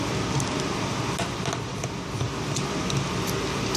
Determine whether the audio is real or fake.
real